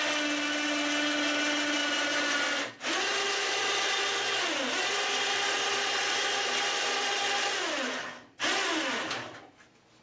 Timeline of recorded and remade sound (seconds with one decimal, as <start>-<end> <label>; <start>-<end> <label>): 0.0-10.0 recorded